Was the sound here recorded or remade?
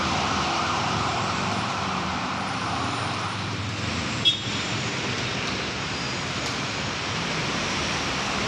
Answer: remade